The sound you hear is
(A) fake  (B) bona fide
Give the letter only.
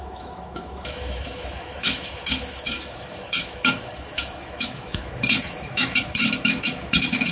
A